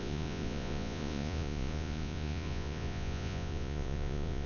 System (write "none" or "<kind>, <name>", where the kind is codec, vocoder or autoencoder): vocoder, Vocos